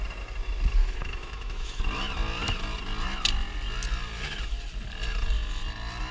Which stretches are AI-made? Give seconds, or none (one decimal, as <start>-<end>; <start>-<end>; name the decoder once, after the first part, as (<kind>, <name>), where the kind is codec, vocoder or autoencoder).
0.8-1.8 (autoencoder, DAC-VAE)